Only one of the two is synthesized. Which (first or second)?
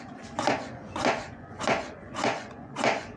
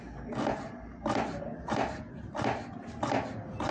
first